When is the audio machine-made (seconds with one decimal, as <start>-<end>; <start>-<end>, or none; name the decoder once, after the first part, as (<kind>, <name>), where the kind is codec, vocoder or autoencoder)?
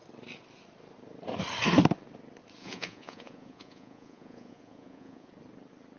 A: 2.6-5.3 (vocoder, Vocos)